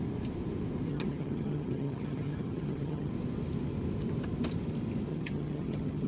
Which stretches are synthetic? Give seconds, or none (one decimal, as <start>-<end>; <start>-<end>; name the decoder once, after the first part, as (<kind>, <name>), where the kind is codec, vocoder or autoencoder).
0.9-3.1 (vocoder, HiFi-GAN); 5.1-6.1